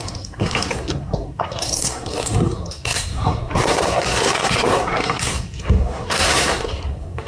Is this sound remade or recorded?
remade